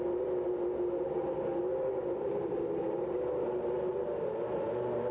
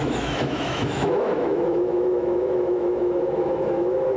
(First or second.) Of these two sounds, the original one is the first